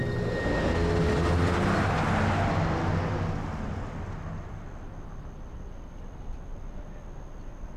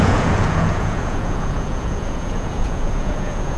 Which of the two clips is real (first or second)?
first